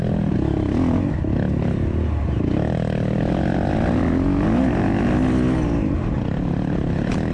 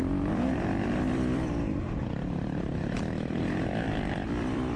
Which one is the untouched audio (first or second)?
first